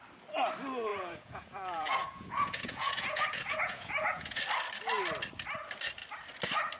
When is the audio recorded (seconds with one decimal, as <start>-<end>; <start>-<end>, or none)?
0.0-0.9; 4.4-6.8